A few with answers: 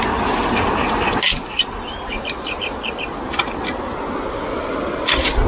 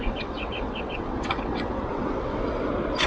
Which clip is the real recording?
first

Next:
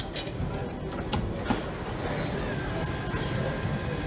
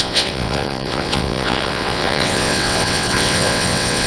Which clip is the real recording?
first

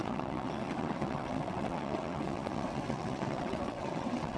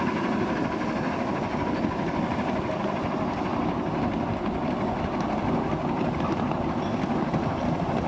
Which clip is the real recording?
second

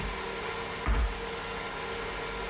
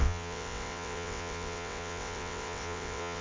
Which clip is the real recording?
first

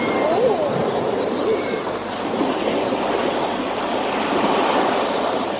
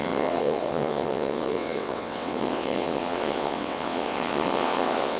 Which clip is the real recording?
first